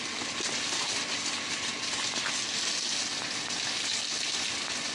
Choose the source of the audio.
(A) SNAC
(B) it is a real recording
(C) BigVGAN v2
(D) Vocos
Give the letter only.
B